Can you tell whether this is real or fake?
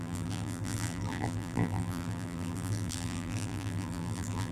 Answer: fake